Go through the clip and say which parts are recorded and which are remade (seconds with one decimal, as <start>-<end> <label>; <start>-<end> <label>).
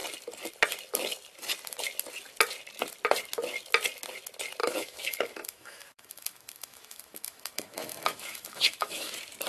0.0-4.6 recorded; 4.6-9.1 remade; 9.1-9.5 recorded